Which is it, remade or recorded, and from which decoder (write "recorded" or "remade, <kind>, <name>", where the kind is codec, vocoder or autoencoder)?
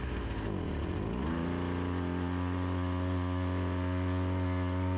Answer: recorded